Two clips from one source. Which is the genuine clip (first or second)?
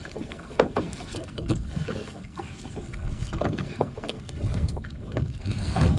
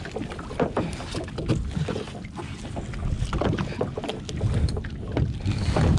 second